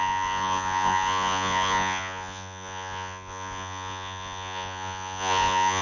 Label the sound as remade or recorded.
remade